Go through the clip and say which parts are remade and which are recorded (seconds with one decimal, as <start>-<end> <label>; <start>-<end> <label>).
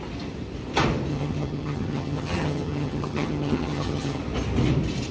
0.0-1.1 recorded; 1.1-4.2 remade; 4.2-5.1 recorded